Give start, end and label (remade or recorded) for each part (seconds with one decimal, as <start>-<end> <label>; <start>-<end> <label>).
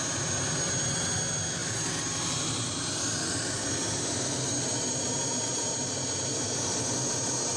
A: 0.0-7.6 recorded